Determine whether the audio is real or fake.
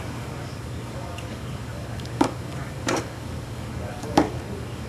fake